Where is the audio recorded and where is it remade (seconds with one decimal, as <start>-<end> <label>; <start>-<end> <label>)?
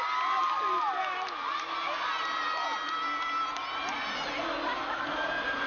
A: 0.0-5.7 recorded